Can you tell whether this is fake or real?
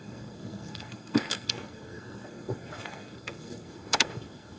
fake